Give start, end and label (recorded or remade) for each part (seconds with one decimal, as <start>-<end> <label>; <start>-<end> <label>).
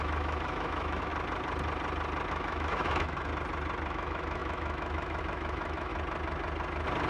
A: 0.0-1.1 remade; 1.1-2.3 recorded; 2.3-3.3 remade; 3.3-3.9 recorded; 3.9-5.9 remade; 5.9-7.1 recorded